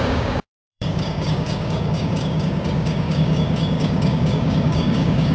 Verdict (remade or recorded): remade